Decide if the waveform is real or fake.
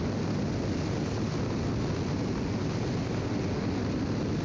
real